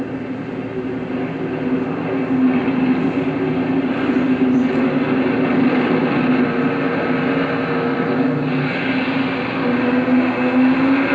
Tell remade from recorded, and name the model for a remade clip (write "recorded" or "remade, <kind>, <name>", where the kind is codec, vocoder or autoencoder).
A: recorded